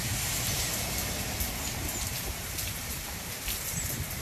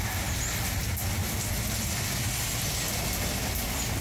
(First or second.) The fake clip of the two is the first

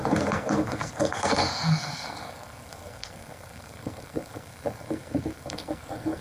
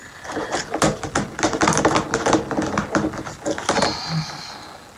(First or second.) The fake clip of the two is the first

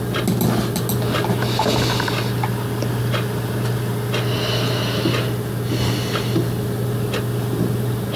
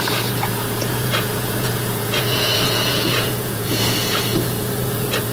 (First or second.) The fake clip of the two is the second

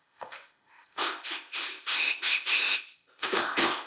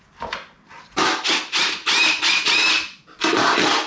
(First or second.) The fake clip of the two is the first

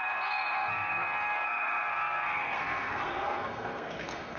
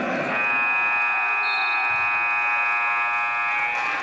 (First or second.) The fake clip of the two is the first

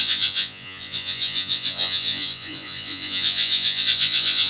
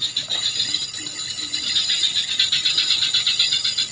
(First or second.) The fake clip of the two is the first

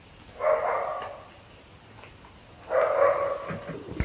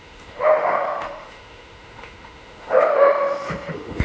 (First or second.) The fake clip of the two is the second